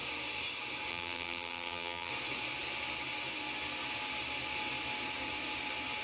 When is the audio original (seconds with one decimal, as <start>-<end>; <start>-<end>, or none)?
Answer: 0.0-0.9; 2.1-6.0